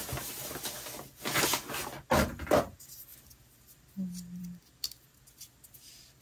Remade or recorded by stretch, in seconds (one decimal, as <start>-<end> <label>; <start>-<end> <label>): 0.0-6.2 recorded